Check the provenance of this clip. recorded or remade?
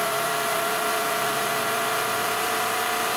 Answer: remade